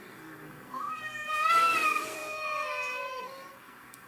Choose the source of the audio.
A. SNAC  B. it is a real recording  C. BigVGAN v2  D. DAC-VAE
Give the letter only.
A